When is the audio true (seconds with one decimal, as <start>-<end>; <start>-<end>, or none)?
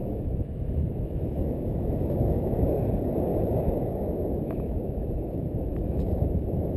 2.9-3.3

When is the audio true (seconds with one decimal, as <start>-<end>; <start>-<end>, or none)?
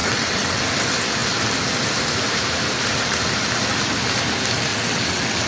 0.6-4.7